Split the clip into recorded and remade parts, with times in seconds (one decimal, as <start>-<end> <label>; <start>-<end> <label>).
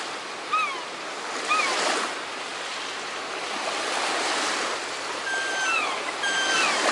0.0-2.5 recorded; 2.5-6.9 remade